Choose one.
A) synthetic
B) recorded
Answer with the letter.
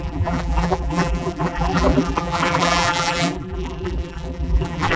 A